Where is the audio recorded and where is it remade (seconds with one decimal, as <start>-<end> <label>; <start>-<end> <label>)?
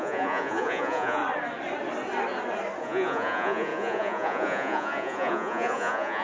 0.0-1.2 remade; 1.2-2.8 recorded; 2.8-6.2 remade